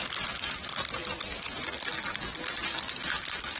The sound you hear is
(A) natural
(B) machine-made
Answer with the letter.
A